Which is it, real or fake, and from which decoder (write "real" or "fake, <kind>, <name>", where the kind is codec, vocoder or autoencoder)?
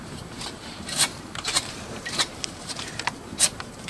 fake, vocoder, BigVGAN v2